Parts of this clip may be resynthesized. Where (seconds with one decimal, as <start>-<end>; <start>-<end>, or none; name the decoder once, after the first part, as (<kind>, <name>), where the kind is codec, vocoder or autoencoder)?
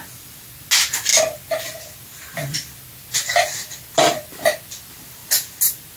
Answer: none